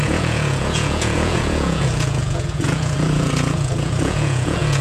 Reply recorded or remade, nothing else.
remade